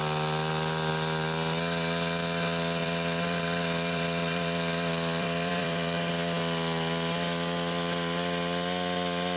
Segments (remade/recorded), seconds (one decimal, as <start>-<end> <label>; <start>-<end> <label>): 0.0-2.8 recorded; 2.8-6.1 remade; 6.1-9.4 recorded